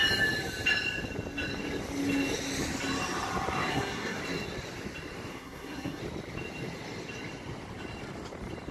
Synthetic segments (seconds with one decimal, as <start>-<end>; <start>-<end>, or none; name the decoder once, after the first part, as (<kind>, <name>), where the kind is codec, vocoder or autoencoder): 3.7-4.2 (codec, SNAC); 5.3-6.0